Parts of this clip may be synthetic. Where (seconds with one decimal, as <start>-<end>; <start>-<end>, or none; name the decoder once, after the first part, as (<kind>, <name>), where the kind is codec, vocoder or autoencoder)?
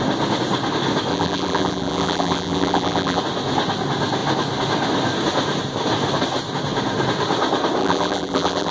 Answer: 1.1-3.2 (vocoder, BigVGAN v2); 7.8-8.7